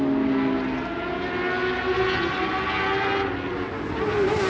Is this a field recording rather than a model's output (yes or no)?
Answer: yes